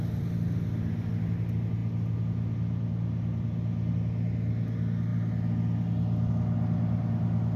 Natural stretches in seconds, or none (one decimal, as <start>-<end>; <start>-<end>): 0.0-7.6